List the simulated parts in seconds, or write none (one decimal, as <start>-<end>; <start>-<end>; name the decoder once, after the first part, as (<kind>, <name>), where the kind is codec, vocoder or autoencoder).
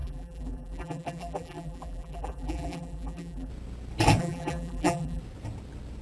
0.0-3.5 (vocoder, BigVGAN v2); 4.2-5.2